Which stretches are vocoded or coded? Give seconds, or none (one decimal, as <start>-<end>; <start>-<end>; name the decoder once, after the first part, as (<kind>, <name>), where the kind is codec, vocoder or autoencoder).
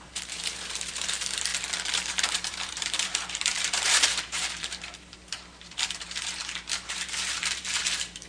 0.0-1.5 (vocoder, BigVGAN v2); 2.1-8.3